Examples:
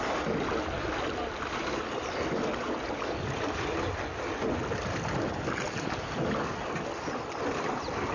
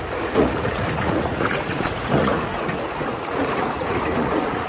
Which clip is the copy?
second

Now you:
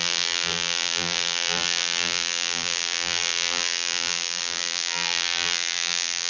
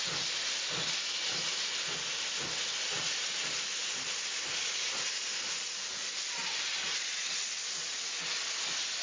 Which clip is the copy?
first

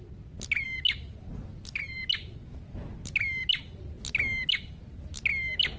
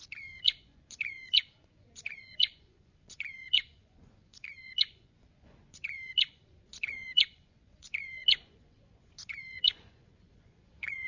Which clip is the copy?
second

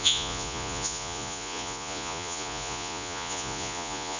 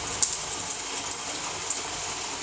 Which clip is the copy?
first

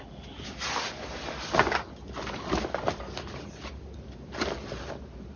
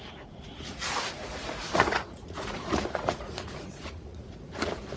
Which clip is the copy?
second